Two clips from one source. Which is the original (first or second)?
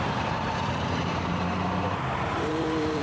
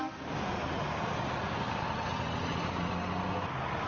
second